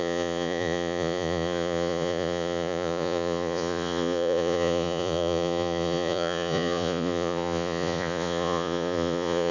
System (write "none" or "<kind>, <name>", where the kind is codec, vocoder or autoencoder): vocoder, Vocos